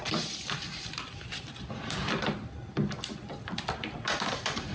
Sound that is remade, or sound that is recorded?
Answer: recorded